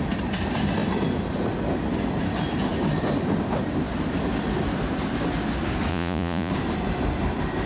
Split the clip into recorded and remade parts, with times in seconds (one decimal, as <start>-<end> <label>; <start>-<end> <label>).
0.0-5.9 recorded; 5.9-6.5 remade; 6.5-7.7 recorded